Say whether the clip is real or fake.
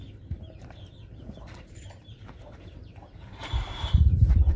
fake